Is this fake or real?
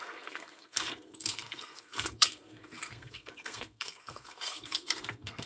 fake